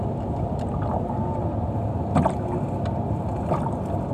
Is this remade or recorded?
recorded